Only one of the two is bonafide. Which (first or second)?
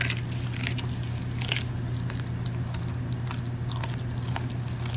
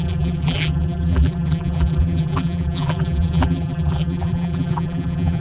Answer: first